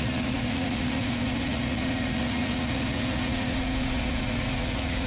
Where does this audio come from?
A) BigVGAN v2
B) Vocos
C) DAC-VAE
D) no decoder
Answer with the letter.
B